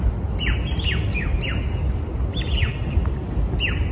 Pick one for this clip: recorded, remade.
recorded